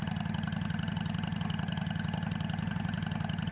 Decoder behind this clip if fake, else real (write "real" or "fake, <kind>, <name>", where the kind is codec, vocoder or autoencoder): real